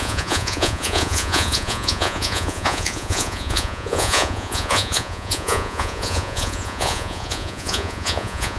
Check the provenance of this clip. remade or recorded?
remade